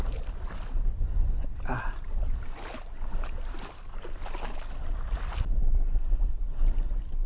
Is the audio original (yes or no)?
yes